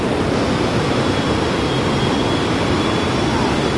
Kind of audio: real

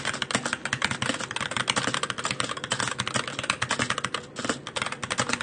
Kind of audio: real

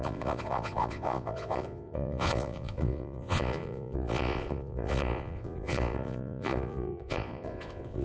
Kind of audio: fake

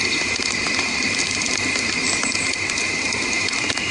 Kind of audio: real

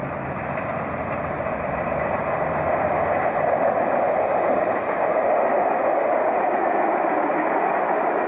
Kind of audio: real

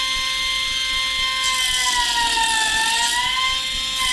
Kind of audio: real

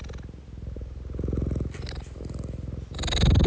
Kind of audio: real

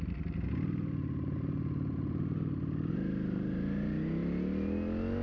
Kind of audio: real